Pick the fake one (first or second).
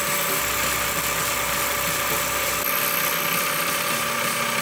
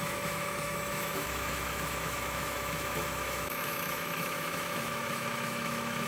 second